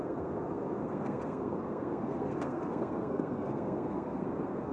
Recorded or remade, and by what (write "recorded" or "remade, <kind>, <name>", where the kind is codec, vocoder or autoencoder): remade, codec, SNAC